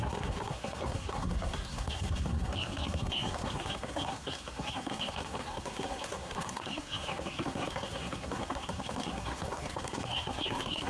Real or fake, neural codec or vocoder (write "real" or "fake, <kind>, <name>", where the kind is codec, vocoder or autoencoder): fake, codec, SNAC